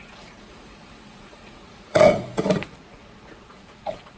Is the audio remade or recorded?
remade